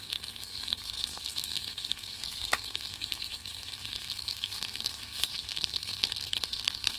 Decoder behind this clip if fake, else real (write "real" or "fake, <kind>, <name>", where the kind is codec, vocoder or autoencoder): fake, codec, SNAC